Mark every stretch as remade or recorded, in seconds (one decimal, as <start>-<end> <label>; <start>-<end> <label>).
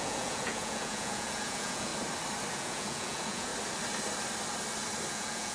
0.0-1.9 remade; 1.9-2.5 recorded; 2.5-3.5 remade; 3.5-5.1 recorded; 5.1-5.5 remade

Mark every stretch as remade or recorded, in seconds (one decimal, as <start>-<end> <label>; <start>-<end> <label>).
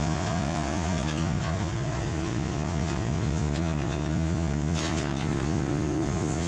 0.0-6.5 remade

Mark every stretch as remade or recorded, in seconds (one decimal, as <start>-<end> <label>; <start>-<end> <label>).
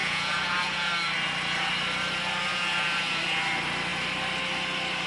0.0-0.9 remade; 0.9-2.5 recorded; 2.5-3.2 remade; 3.2-5.1 recorded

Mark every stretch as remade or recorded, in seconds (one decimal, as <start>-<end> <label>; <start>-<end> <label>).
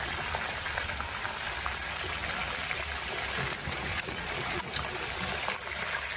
0.0-3.9 recorded; 3.9-4.6 remade; 4.6-6.2 recorded